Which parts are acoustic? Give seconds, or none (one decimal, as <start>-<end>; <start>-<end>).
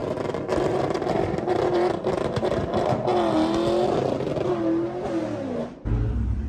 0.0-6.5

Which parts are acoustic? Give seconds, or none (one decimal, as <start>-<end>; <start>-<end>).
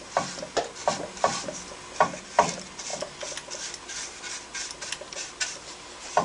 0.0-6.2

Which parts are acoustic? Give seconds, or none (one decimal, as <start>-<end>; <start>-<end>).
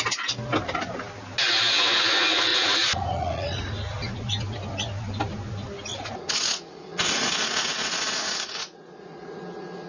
0.0-2.5; 3.7-5.9; 9.4-9.9